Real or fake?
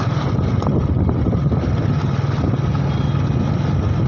real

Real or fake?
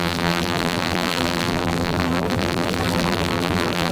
fake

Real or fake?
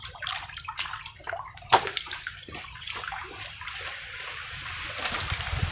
fake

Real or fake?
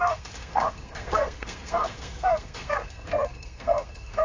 fake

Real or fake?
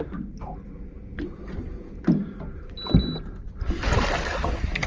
real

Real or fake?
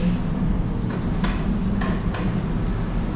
real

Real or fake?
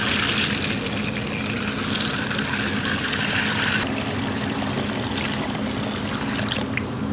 real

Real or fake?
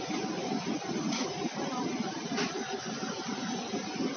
real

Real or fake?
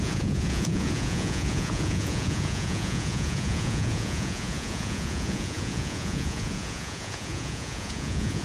fake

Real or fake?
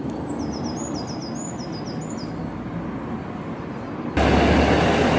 real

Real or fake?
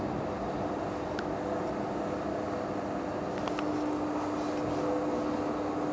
real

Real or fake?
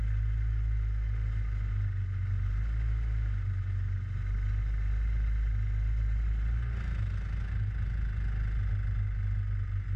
real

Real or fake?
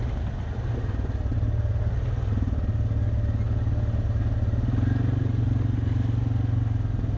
real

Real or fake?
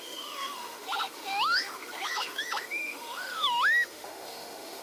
fake